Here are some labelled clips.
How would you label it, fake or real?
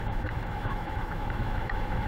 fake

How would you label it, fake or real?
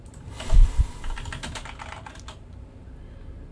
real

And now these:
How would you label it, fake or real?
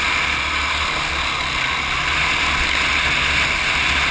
real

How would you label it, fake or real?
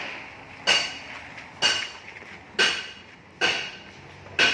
real